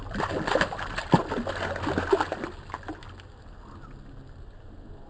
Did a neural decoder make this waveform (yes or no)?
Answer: no